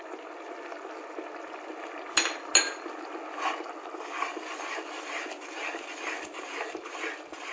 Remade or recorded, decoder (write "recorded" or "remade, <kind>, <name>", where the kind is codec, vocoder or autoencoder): recorded